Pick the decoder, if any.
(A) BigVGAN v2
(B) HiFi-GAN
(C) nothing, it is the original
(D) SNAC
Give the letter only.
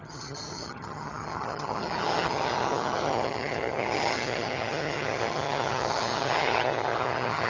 B